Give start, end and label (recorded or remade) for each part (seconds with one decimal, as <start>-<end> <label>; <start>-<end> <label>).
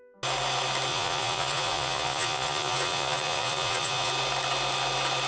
0.0-0.9 recorded; 0.9-4.1 remade; 4.1-5.3 recorded